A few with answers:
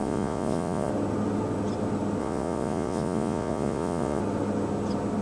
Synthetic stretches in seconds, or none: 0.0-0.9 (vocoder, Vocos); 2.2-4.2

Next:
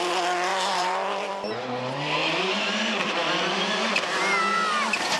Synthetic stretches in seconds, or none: 0.5-1.3 (vocoder, BigVGAN v2); 2.2-2.8